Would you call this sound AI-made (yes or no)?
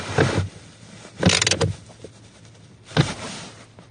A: no